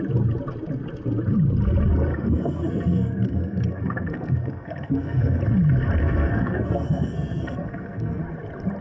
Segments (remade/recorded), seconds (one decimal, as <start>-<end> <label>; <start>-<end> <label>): 0.0-2.1 recorded; 2.1-5.4 remade; 5.4-6.0 recorded; 6.0-8.2 remade; 8.2-8.8 recorded